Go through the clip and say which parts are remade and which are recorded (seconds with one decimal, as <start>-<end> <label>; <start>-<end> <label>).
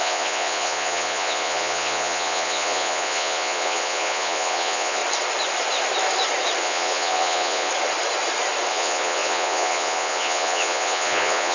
0.0-5.0 remade; 5.0-6.6 recorded; 6.6-7.7 remade; 7.7-8.7 recorded; 8.7-11.5 remade